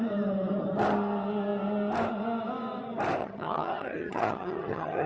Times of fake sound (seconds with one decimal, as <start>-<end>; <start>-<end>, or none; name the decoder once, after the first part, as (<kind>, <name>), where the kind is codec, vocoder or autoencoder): 3.2-5.1 (vocoder, HiFi-GAN)